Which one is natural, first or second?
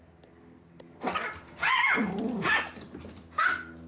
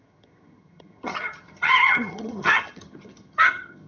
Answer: first